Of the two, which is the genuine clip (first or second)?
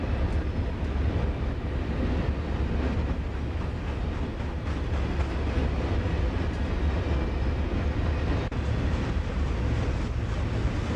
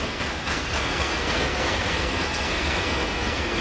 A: first